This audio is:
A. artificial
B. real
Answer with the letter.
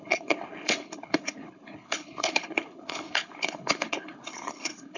A